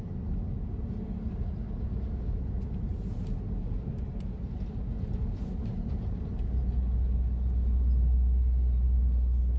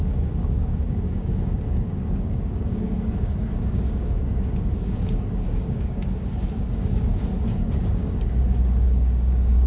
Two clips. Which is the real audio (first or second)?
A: first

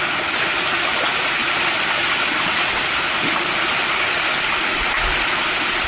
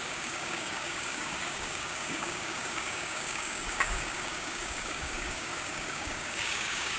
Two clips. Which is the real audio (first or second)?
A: first